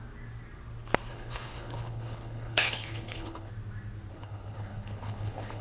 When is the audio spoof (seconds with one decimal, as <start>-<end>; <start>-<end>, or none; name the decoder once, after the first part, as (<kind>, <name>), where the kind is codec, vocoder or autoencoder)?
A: 1.1-3.5 (codec, HILCodec); 4.1-5.6